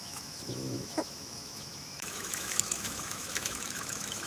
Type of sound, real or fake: fake